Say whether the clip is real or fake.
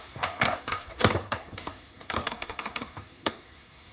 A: fake